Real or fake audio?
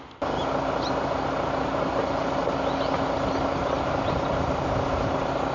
real